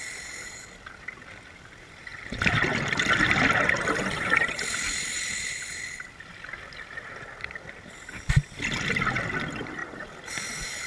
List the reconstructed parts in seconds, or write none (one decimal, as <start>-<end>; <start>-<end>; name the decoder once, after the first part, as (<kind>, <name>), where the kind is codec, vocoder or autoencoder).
none